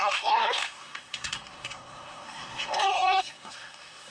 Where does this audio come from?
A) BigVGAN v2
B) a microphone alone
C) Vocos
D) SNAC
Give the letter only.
D